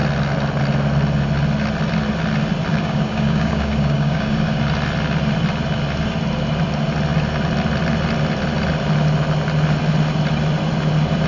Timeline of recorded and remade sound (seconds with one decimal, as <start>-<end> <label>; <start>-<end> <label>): 0.0-2.7 recorded; 2.7-4.6 remade; 4.6-11.3 recorded